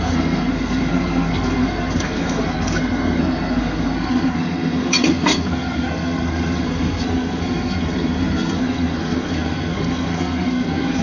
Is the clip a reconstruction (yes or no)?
yes